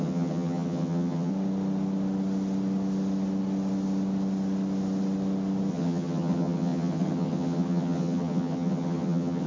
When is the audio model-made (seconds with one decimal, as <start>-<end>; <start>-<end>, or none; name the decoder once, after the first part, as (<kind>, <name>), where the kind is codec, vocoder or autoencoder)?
0.0-1.3 (vocoder, HiFi-GAN); 5.7-9.5